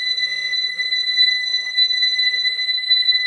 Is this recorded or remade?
remade